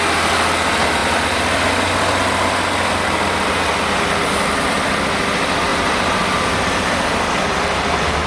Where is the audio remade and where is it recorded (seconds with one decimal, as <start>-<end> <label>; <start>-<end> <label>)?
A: 0.0-5.7 recorded; 5.7-8.3 remade